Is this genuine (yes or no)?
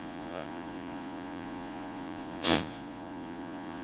no